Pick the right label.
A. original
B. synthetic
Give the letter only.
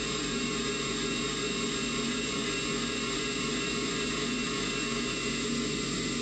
B